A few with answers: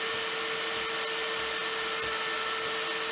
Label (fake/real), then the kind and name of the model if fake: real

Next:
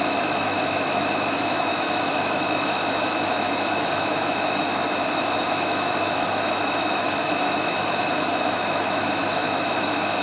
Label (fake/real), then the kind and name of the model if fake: fake, autoencoder, DAC-VAE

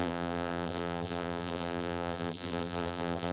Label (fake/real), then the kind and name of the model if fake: fake, vocoder, BigVGAN v2